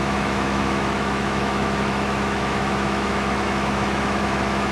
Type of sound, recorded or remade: remade